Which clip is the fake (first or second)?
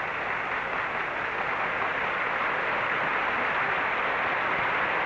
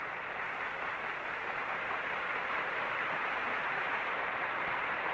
second